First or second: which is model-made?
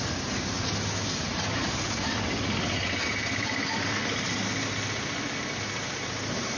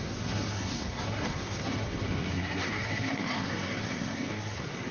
second